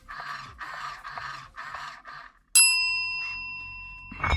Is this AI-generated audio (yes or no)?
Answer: no